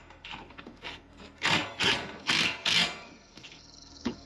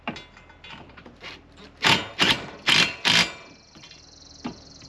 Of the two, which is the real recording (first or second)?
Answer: second